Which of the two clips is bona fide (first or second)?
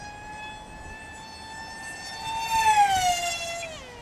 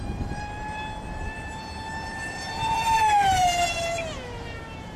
first